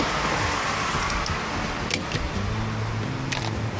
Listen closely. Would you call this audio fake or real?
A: real